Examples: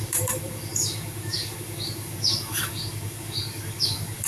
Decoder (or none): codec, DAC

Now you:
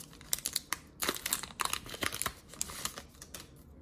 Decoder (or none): none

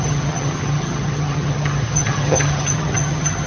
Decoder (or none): vocoder, HiFi-GAN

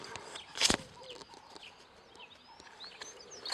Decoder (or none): none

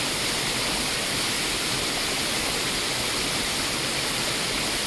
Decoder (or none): none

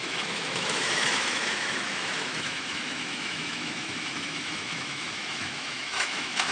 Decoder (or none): autoencoder, DAC-VAE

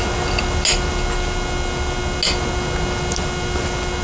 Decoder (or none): none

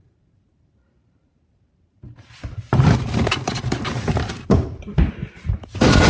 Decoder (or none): vocoder, BigVGAN v2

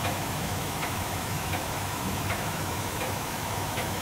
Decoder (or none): autoencoder, DAC-VAE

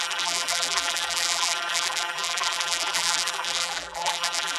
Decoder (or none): vocoder, BigVGAN v2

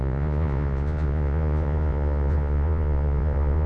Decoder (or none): vocoder, Vocos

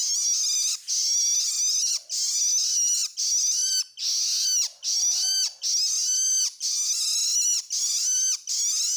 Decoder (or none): none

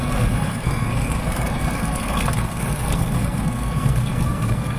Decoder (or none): codec, SNAC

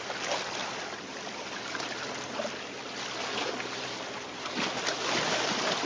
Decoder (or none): none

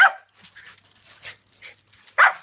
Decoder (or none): none